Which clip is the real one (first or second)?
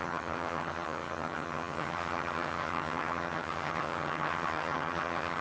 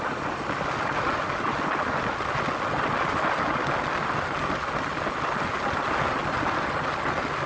second